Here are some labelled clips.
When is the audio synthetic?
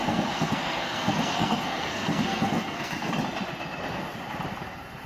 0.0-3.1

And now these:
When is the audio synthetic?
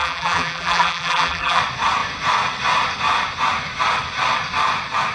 0.0-1.6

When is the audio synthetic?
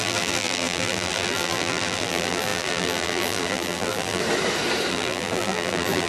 0.0-4.2; 4.9-6.1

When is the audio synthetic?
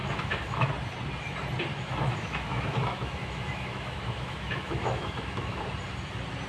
0.0-0.7; 1.7-5.6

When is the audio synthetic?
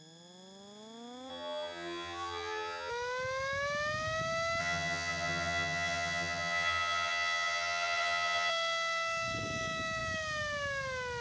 1.3-2.9; 4.6-8.5